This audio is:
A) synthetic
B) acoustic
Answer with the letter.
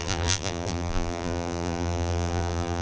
A